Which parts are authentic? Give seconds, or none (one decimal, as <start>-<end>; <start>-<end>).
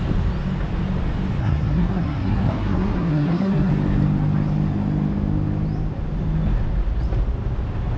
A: 0.0-1.4; 3.7-8.0